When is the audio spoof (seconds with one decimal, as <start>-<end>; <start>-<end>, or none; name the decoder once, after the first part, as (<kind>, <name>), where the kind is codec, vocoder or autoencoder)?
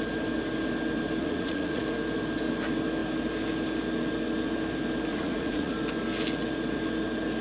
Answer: 1.2-1.8 (vocoder, Vocos); 5.1-5.7